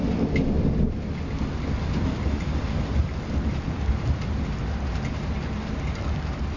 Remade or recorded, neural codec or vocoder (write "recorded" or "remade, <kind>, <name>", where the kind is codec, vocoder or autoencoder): recorded